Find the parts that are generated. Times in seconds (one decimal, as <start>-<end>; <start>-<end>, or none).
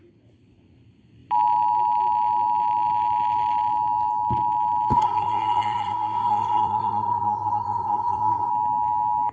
4.9-8.5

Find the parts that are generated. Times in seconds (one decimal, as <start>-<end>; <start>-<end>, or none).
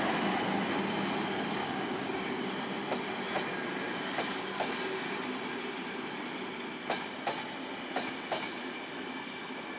1.6-2.5